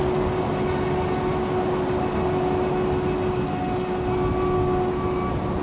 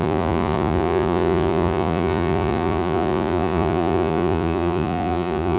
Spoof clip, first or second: second